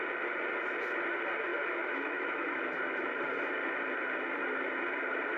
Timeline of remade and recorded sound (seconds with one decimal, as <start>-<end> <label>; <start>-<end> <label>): 0.0-1.5 recorded; 1.5-2.6 remade; 2.6-5.4 recorded